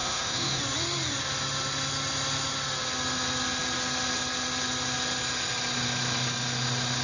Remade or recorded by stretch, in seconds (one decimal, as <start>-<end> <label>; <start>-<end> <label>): 0.0-0.6 remade; 0.6-7.0 recorded